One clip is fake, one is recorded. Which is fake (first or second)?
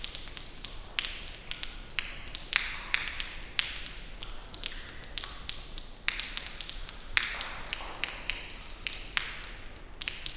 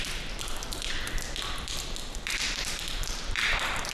second